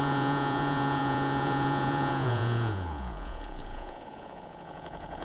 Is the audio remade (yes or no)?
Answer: yes